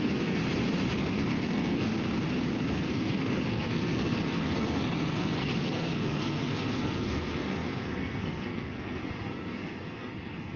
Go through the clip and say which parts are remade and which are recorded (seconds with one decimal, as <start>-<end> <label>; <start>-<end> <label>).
0.0-0.4 remade; 0.4-1.0 recorded; 1.0-1.9 remade; 1.9-2.7 recorded; 2.7-10.6 remade